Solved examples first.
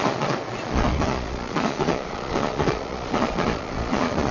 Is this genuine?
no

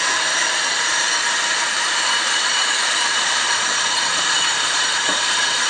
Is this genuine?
no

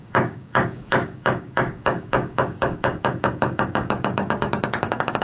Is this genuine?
no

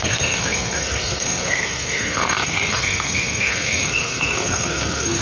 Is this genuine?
no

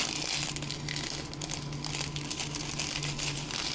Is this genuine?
yes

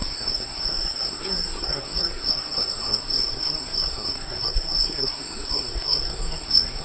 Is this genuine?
no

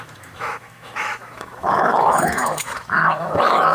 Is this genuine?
no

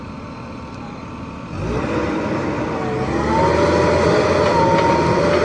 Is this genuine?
yes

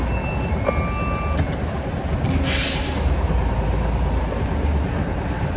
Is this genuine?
yes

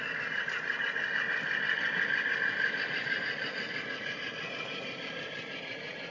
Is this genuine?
yes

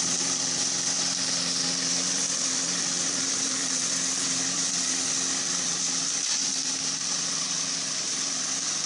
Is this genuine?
no